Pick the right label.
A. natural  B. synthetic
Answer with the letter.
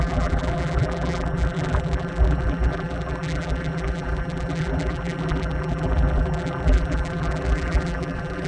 B